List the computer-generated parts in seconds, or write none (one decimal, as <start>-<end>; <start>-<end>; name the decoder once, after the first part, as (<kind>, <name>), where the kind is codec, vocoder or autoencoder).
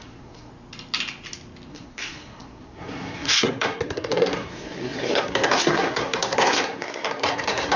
0.0-0.5 (codec, SNAC); 1.7-7.8